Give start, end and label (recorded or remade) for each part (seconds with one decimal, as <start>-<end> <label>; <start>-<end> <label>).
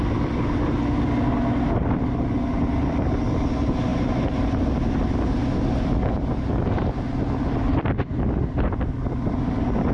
0.0-9.9 recorded